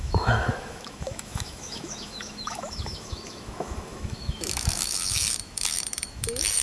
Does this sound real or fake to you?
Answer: fake